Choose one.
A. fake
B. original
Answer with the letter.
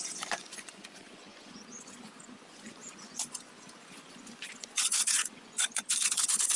A